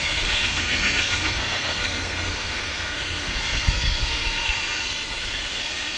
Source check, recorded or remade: remade